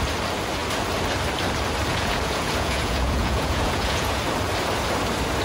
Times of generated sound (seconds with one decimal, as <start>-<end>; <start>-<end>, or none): 1.9-4.2